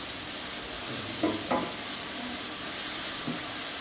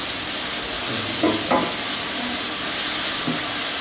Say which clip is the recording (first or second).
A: second